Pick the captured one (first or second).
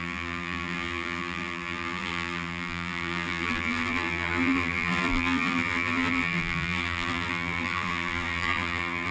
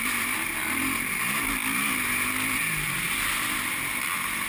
second